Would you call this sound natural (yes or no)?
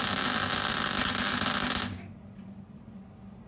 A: yes